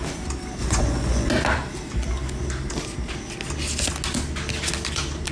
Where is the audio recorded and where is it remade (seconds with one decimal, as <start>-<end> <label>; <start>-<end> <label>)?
0.0-0.6 recorded; 0.6-1.3 remade; 1.3-5.3 recorded